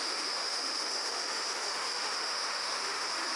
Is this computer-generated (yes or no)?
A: yes